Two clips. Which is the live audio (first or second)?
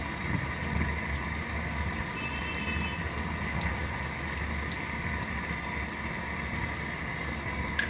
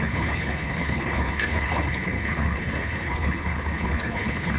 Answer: first